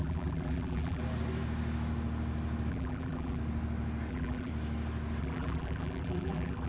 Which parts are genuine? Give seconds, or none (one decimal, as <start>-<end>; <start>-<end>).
1.0-2.7; 3.4-4.1; 4.5-5.2